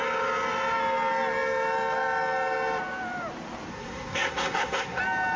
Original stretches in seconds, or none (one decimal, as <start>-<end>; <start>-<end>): 0.0-3.7; 5.0-5.4